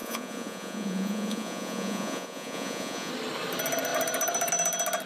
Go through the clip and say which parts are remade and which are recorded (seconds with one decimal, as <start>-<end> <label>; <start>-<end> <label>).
0.0-3.1 remade; 3.1-5.1 recorded